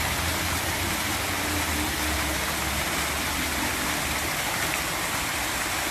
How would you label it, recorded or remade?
recorded